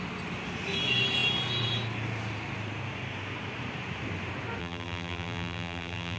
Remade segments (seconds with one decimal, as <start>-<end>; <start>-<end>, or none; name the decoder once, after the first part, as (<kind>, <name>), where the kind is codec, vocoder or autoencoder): 4.6-6.2 (vocoder, BigVGAN v2)